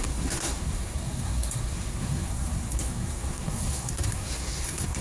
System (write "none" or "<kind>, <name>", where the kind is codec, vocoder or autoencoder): codec, SNAC